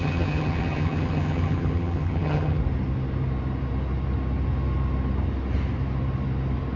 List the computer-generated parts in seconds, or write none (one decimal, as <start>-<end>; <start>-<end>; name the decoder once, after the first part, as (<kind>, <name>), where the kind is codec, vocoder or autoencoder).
0.0-2.6 (vocoder, HiFi-GAN)